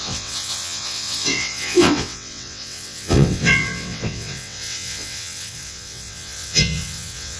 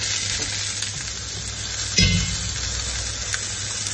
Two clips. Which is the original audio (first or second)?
second